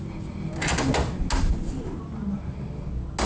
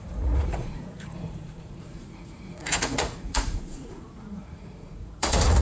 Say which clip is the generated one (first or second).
second